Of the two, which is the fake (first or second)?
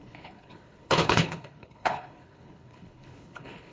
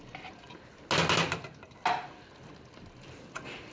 first